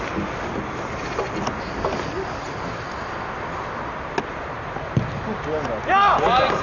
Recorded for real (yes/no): yes